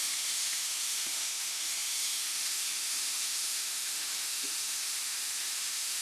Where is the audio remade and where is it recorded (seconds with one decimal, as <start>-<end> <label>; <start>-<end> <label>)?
0.0-6.0 remade